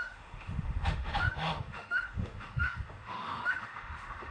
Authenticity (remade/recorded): remade